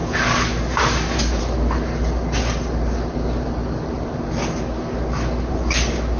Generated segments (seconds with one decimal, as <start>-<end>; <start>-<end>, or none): 0.0-1.9; 4.6-6.2